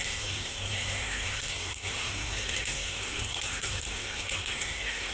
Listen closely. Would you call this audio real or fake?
fake